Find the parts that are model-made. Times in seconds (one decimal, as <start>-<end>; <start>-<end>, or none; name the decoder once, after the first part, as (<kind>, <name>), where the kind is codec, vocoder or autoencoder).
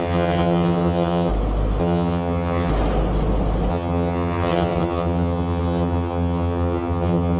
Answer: 0.0-1.3 (vocoder, HiFi-GAN); 1.8-2.7; 3.7-7.4